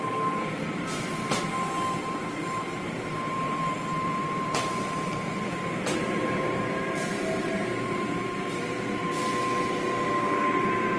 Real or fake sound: fake